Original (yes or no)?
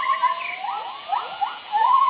yes